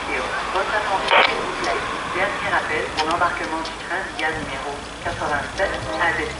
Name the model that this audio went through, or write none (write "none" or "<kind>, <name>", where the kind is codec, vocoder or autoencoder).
none